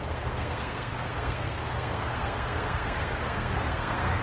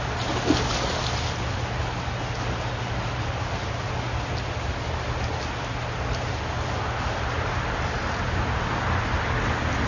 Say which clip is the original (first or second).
second